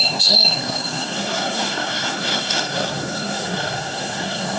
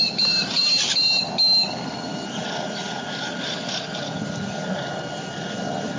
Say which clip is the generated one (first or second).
first